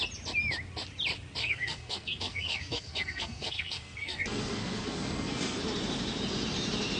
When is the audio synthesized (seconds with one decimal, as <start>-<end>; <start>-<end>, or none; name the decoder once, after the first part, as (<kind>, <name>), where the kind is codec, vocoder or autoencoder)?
1.4-5.6 (codec, SNAC)